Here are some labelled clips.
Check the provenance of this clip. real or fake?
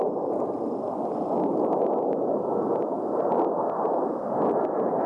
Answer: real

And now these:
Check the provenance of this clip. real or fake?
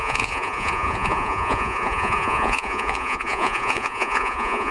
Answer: fake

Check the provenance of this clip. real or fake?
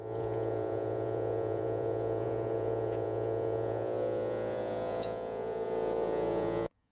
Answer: fake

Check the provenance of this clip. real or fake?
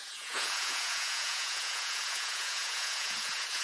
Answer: fake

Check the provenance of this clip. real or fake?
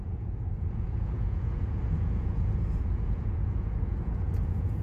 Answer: fake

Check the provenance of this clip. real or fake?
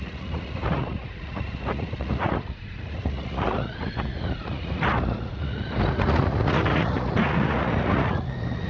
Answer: fake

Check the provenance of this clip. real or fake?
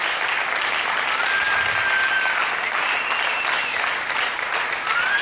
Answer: real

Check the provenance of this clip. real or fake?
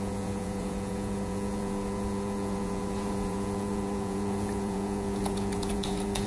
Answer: fake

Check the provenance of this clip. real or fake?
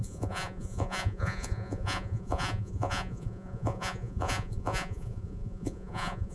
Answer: fake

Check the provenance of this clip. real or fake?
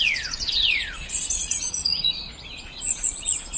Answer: fake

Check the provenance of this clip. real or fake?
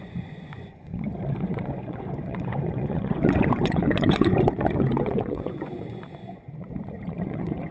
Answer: fake